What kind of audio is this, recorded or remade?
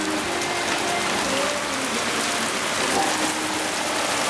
recorded